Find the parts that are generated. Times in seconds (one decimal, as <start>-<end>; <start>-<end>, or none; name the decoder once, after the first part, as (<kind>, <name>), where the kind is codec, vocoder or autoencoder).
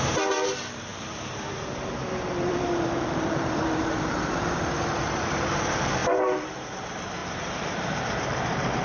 0.0-8.8 (vocoder, BigVGAN v2)